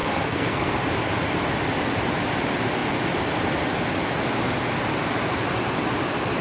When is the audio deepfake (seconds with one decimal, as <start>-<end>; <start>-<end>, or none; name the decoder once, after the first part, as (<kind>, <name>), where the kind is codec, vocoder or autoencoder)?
0.0-0.8 (codec, SNAC)